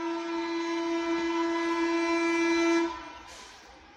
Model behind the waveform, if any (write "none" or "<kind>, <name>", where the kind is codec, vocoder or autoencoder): none